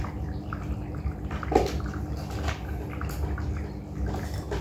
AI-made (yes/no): no